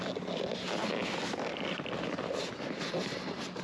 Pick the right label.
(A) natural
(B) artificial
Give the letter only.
A